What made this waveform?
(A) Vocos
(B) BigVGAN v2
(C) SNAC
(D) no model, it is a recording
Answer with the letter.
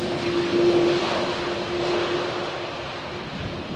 D